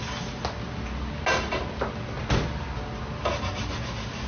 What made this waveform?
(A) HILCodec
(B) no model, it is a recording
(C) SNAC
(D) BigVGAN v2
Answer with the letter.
B